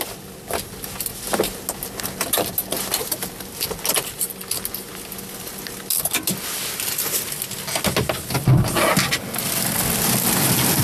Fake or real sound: real